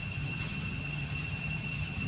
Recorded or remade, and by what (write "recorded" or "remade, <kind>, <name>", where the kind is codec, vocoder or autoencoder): remade, vocoder, HiFi-GAN